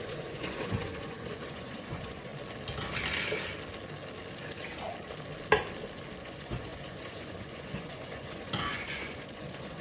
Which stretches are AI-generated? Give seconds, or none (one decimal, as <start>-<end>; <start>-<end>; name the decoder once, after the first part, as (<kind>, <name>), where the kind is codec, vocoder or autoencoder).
0.0-2.3 (vocoder, Vocos); 6.2-9.8